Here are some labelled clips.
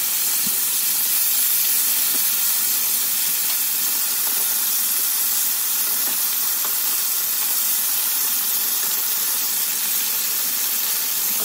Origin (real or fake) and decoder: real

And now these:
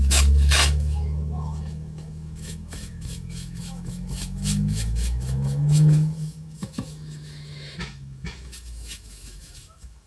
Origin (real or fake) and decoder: fake, autoencoder, DAC-VAE